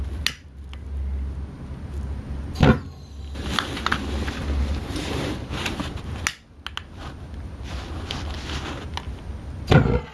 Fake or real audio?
real